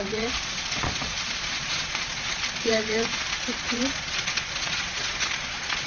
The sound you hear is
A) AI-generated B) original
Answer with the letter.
A